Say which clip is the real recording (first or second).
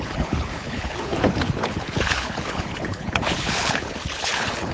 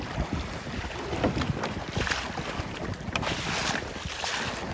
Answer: second